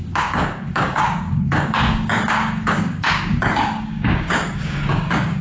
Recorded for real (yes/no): no